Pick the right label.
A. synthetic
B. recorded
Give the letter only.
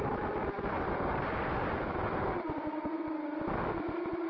A